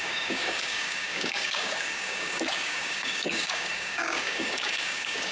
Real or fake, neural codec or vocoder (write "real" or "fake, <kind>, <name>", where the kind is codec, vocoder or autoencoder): fake, codec, DAC